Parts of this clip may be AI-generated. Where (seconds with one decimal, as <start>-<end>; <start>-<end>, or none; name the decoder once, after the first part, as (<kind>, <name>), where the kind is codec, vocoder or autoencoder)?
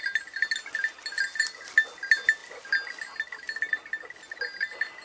none